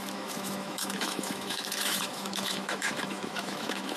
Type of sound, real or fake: fake